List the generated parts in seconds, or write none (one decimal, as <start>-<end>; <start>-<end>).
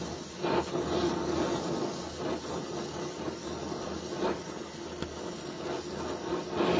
none